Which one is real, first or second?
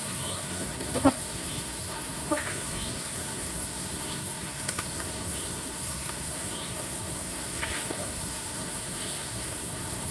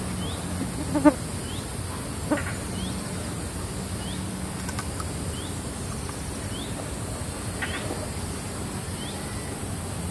second